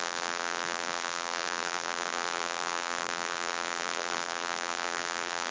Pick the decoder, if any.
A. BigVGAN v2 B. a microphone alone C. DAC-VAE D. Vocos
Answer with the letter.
A